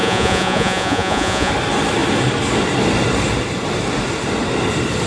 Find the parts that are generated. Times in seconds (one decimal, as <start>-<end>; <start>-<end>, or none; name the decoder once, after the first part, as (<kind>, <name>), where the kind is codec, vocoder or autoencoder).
0.0-1.5 (vocoder, Vocos)